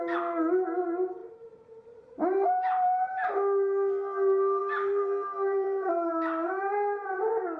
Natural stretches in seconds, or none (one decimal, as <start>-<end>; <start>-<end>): 0.0-1.2; 3.3-4.6; 6.6-7.6